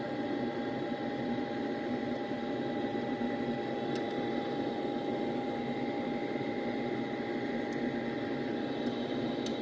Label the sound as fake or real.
real